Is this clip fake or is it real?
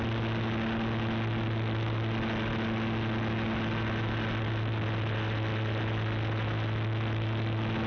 real